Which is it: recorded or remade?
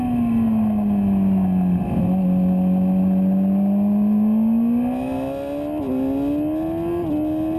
recorded